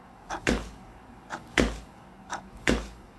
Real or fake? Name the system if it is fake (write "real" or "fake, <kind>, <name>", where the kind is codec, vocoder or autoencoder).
fake, codec, DAC